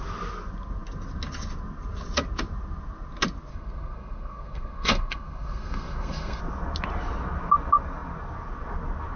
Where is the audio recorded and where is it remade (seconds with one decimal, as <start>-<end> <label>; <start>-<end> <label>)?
0.0-3.5 recorded; 3.5-6.4 remade; 6.4-9.2 recorded